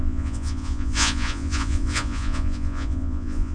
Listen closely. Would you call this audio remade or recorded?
remade